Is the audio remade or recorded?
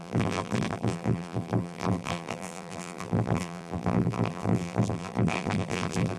remade